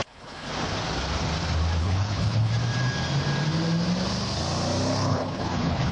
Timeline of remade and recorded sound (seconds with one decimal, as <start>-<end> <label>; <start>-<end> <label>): 0.0-0.5 remade; 0.5-1.8 recorded; 1.8-2.5 remade; 2.5-5.1 recorded; 5.1-5.9 remade